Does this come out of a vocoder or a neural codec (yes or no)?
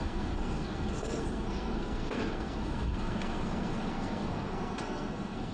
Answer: yes